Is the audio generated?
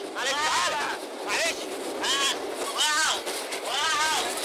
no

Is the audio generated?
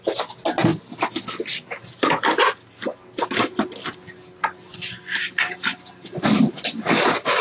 no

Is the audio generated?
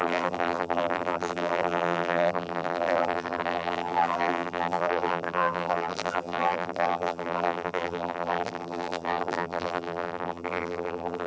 yes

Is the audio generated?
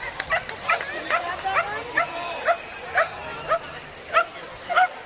no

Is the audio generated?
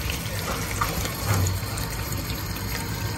no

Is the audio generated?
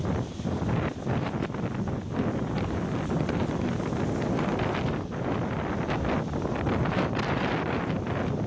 no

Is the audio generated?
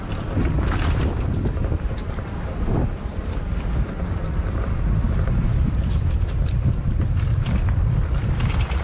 yes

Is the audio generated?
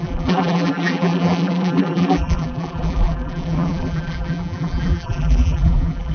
yes